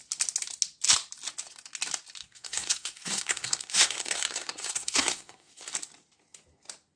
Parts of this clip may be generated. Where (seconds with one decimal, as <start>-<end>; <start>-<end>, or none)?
2.2-5.7